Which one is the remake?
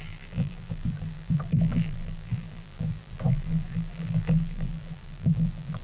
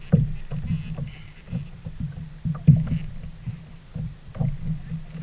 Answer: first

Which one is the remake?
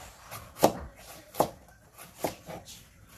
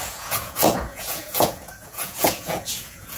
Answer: second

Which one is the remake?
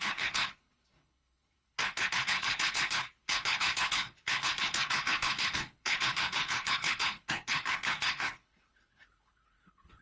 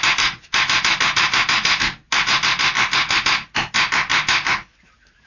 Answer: first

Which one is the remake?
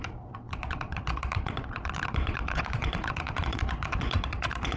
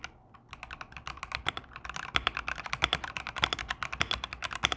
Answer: first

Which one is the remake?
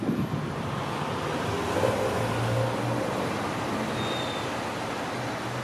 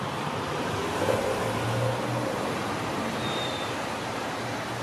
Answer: second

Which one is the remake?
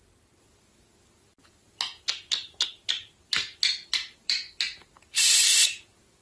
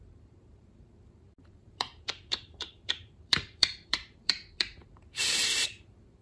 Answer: second